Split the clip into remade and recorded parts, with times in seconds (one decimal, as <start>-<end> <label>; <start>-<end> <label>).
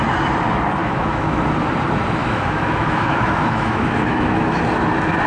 0.0-0.8 recorded; 0.8-1.4 remade; 1.4-2.2 recorded; 2.2-4.6 remade; 4.6-5.3 recorded